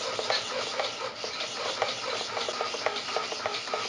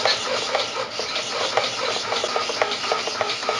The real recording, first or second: second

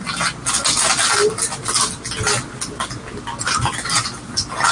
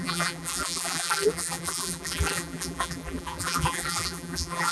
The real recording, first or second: first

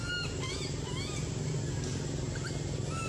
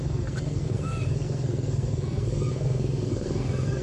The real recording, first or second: first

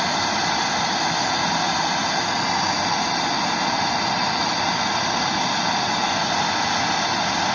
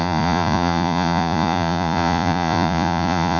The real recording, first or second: first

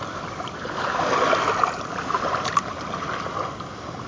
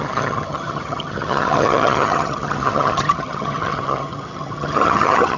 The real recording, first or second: first